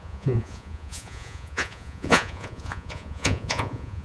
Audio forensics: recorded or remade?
remade